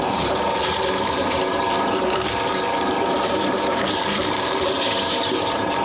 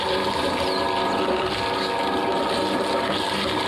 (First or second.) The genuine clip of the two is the second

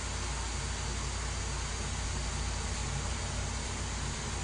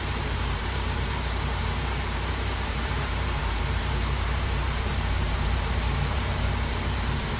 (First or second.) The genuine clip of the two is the first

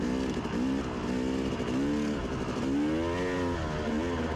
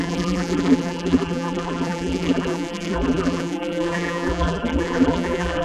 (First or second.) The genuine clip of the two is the first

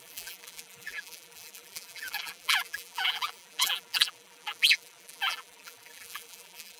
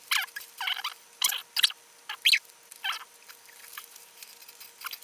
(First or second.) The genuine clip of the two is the second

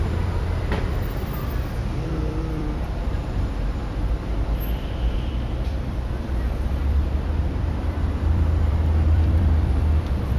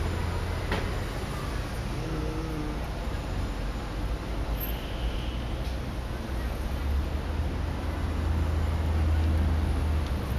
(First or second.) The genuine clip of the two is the second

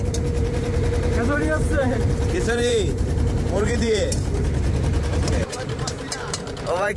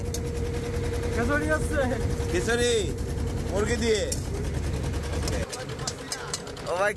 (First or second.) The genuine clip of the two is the second